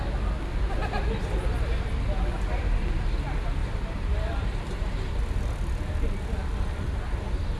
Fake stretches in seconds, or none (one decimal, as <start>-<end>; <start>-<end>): 3.6-5.2